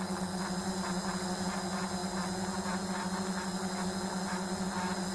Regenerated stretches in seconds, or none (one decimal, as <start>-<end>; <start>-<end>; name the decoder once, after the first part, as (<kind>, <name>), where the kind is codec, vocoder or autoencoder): none